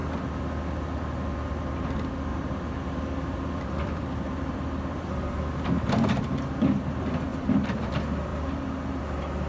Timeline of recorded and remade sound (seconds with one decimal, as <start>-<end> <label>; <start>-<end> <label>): 0.0-2.3 recorded; 2.3-5.9 remade; 5.9-7.3 recorded; 7.3-7.9 remade; 7.9-9.5 recorded